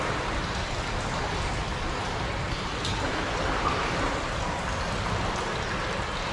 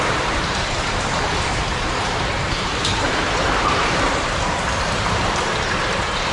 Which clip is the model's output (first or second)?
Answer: second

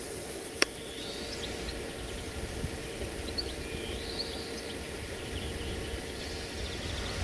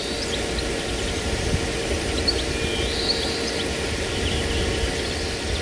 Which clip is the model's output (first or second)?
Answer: first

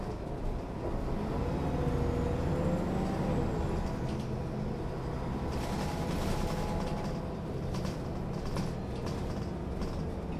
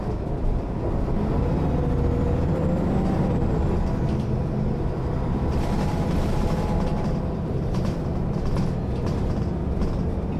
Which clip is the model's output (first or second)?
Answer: second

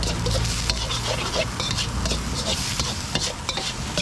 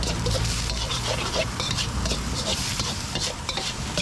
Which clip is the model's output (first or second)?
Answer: second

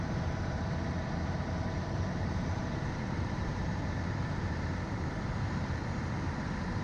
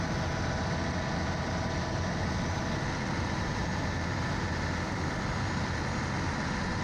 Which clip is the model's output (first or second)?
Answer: first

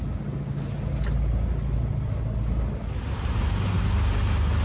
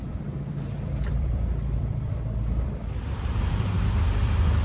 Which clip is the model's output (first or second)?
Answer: second